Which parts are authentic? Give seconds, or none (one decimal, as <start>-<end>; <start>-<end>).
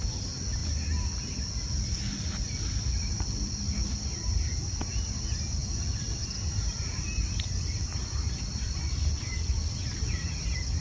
0.0-5.6; 8.9-10.8